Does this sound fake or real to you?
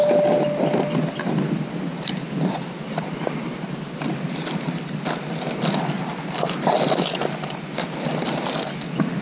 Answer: real